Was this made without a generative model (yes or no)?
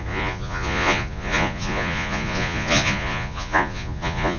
no